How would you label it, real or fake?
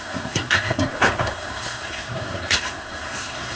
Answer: fake